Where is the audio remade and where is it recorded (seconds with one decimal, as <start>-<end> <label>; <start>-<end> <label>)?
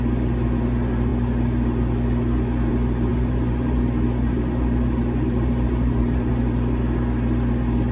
0.0-3.1 recorded; 3.1-6.3 remade; 6.3-7.9 recorded